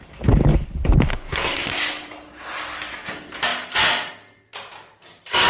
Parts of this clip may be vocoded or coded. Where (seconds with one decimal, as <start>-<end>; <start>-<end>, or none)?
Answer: none